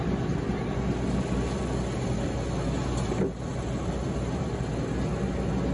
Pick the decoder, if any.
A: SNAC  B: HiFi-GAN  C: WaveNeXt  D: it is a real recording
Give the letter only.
D